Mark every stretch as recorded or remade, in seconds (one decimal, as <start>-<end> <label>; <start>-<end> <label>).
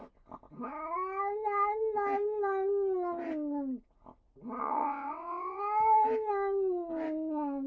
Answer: 0.0-4.6 recorded; 4.6-5.6 remade; 5.6-7.7 recorded